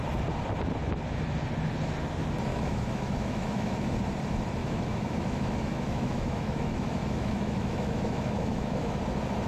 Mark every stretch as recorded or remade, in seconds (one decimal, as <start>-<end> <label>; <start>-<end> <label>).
0.0-2.5 recorded; 2.5-3.9 remade; 3.9-4.6 recorded; 4.6-9.0 remade; 9.0-9.5 recorded